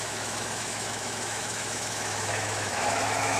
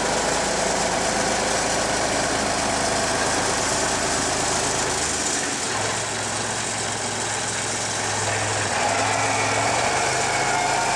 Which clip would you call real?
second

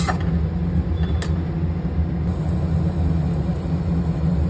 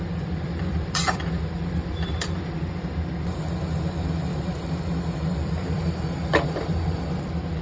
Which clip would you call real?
first